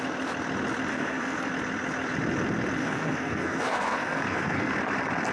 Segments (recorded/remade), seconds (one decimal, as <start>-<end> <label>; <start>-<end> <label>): 0.0-0.9 recorded; 0.9-1.5 remade; 1.5-2.8 recorded; 2.8-4.7 remade; 4.7-5.3 recorded